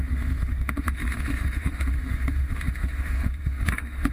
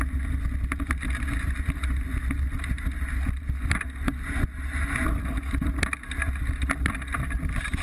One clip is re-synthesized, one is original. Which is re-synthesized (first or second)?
first